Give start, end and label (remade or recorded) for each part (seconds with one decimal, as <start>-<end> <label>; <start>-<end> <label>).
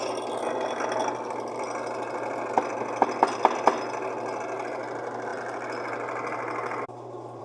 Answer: 0.0-7.4 recorded